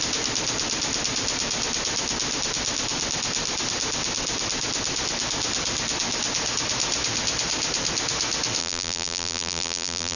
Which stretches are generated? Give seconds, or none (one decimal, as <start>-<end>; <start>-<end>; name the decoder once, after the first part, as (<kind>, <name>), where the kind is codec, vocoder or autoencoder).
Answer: 8.6-10.2 (vocoder, BigVGAN v2)